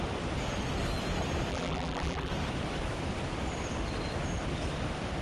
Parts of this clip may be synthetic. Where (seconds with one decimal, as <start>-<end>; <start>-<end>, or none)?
1.5-2.3